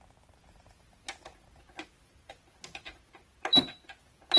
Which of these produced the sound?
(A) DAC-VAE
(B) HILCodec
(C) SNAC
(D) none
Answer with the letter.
D